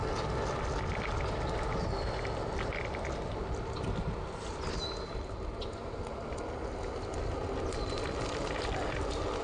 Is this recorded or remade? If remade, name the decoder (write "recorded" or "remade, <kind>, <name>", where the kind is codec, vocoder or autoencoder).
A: recorded